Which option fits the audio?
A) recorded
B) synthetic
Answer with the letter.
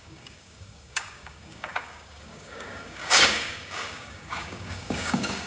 B